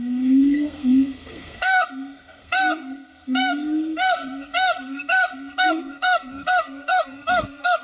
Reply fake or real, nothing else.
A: fake